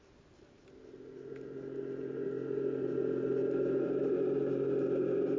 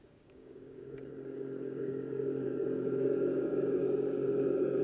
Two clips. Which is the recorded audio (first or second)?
first